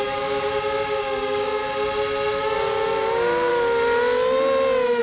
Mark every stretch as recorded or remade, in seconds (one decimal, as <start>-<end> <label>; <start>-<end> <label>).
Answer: 0.0-1.6 remade; 1.6-2.4 recorded; 2.4-3.5 remade; 3.5-5.0 recorded